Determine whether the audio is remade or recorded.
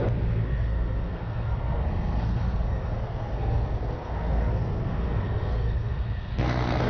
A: remade